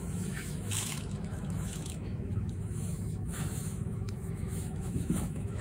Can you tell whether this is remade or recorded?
remade